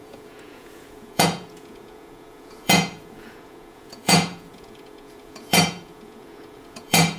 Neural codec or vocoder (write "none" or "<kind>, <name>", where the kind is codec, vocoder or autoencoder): vocoder, Vocos